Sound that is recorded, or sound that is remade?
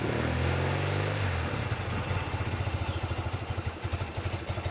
recorded